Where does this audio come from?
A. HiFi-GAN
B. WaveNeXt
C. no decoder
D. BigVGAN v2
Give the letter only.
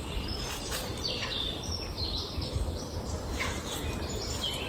D